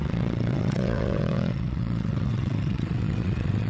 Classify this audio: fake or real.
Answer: fake